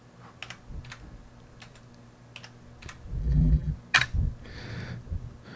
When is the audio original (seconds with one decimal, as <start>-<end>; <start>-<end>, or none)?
0.0-3.2; 3.7-5.6